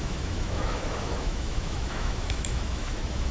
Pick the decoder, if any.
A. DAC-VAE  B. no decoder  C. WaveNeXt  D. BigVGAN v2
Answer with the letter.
A